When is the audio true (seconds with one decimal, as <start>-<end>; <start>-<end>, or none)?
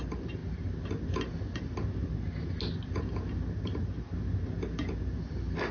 0.0-5.7